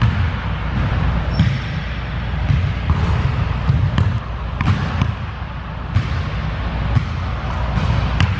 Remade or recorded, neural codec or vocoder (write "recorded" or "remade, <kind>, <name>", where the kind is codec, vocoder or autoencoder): recorded